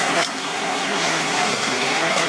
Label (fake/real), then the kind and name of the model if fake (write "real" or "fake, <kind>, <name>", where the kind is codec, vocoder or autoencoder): fake, codec, SNAC